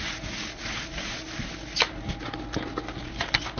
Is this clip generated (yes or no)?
no